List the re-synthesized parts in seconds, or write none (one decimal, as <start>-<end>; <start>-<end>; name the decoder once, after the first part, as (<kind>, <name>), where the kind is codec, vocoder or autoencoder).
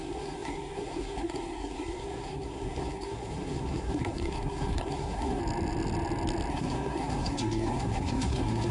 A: 0.0-5.4 (codec, SNAC); 6.5-8.7